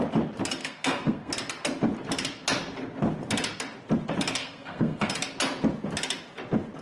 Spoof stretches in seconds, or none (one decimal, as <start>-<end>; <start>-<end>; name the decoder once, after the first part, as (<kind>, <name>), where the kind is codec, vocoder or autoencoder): 0.6-1.3 (codec, SNAC); 4.4-5.1